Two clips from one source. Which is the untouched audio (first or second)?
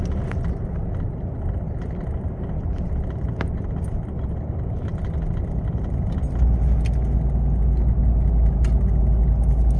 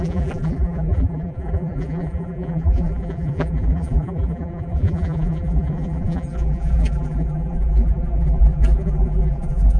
first